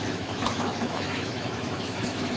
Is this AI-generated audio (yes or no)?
yes